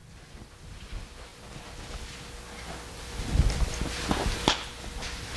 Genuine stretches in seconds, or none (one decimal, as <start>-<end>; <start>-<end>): 0.0-5.4